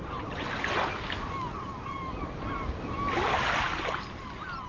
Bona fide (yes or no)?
yes